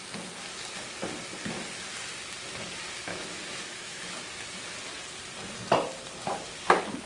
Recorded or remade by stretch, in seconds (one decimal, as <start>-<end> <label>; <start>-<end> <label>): 0.0-3.1 recorded; 3.1-4.0 remade; 4.0-7.1 recorded